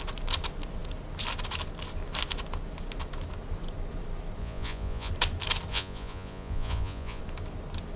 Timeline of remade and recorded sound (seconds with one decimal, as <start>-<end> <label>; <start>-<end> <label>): 0.0-4.4 recorded; 4.4-5.1 remade; 5.1-5.7 recorded; 5.7-7.2 remade; 7.2-8.0 recorded